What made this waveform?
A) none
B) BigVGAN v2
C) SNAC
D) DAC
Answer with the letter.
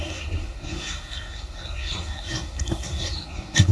C